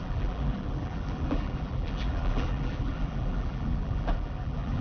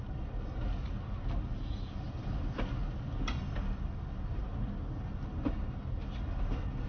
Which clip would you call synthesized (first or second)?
first